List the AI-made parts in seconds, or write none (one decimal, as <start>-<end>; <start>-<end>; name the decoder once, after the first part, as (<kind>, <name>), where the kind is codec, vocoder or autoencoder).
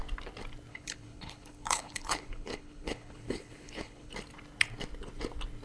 0.7-4.1 (codec, HILCodec)